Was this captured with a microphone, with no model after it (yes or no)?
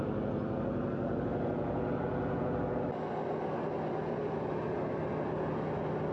yes